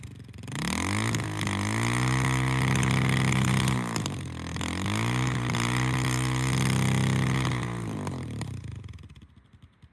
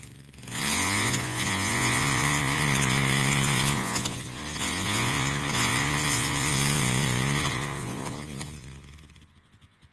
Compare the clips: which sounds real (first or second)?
first